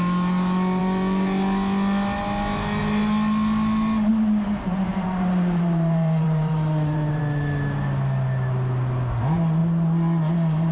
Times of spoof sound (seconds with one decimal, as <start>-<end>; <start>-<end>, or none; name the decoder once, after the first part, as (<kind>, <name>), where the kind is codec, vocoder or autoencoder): 4.1-7.2 (vocoder, BigVGAN v2)